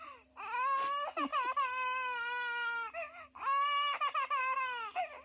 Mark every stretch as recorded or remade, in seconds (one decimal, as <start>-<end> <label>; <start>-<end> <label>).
0.0-5.2 recorded